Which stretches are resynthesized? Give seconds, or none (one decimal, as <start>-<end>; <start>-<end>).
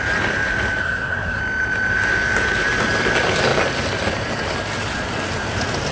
0.8-1.4